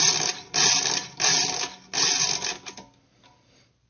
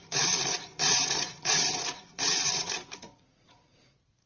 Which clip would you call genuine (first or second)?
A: first